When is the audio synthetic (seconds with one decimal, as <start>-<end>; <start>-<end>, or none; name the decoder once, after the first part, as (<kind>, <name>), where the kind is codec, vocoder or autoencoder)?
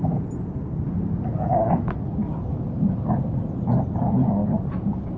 none